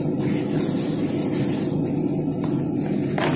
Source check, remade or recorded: recorded